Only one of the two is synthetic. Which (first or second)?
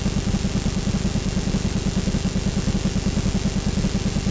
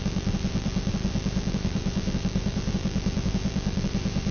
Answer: second